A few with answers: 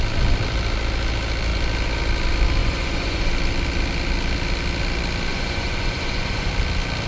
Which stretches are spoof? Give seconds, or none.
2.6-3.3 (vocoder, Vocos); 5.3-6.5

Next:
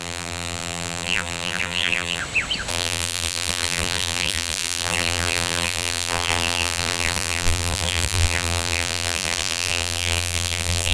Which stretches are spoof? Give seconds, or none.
0.0-2.2 (vocoder, BigVGAN v2); 2.7-10.9

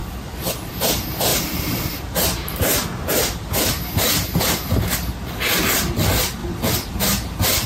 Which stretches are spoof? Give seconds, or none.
1.3-4.8 (vocoder, BigVGAN v2)

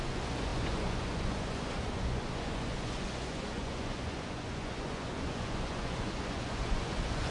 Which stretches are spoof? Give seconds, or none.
0.0-7.3 (vocoder, Vocos)

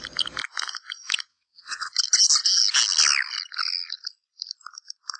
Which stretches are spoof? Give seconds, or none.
1.3-1.9 (vocoder, WaveNeXt)

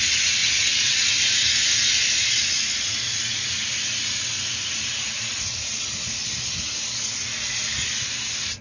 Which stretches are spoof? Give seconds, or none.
0.4-1.2 (vocoder, WaveNeXt)

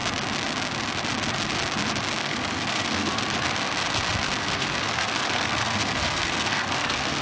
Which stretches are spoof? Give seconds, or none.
2.2-3.2 (codec, SNAC); 4.4-7.2

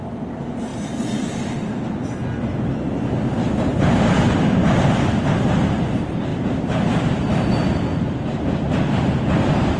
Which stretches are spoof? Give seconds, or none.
none